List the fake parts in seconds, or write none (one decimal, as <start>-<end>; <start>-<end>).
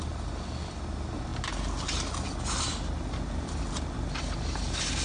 none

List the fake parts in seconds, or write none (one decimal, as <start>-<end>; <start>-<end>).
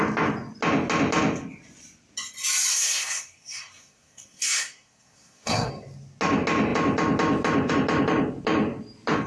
2.7-5.7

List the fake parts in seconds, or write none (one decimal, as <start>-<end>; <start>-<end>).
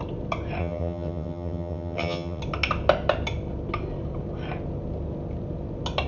0.6-2.4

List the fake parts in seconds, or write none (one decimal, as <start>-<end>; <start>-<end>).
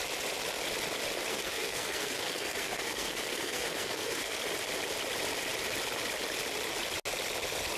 1.3-4.4